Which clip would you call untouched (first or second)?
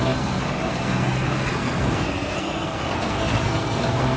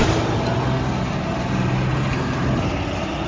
second